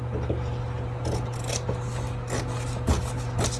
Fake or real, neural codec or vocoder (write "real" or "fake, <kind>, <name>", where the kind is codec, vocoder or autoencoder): real